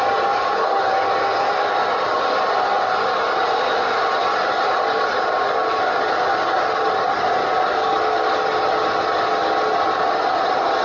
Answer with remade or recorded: recorded